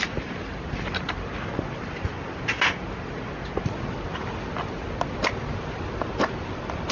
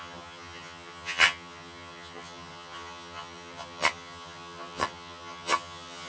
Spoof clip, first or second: second